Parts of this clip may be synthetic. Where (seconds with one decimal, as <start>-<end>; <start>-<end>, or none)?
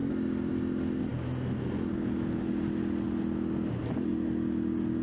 none